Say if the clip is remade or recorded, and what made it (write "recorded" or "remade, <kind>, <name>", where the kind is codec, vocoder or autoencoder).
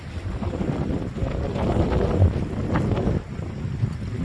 recorded